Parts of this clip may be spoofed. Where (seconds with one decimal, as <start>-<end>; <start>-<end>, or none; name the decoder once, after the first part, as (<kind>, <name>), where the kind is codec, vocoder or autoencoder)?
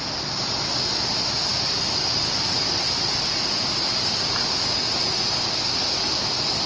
none